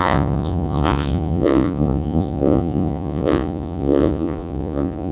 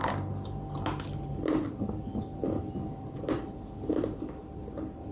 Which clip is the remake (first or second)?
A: first